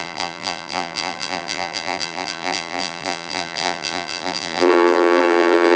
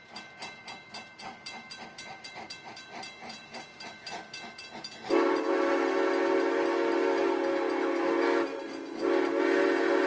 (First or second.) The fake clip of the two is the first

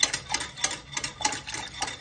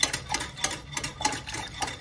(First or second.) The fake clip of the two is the second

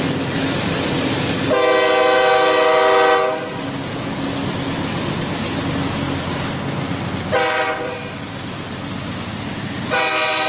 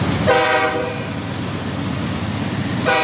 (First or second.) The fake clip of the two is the second